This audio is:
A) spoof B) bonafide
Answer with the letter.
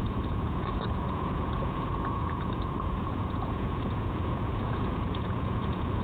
A